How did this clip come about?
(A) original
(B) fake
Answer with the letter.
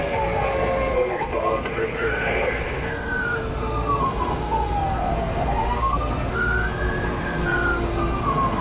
B